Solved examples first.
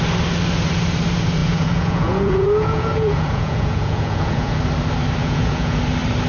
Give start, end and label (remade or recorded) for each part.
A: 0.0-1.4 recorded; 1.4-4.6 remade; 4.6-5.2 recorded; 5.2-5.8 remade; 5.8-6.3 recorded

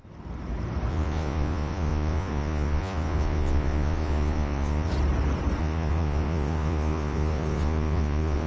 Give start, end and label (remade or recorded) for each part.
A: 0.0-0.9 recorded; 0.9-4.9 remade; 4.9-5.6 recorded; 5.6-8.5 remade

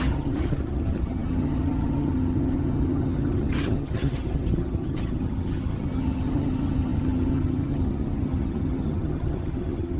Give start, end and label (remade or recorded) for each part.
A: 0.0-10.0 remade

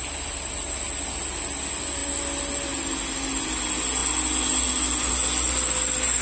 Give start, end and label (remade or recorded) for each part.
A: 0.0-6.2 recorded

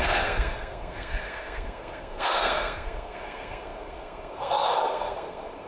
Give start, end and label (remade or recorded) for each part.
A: 0.0-5.7 remade